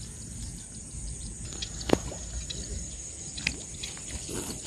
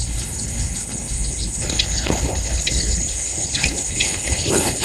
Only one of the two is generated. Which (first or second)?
second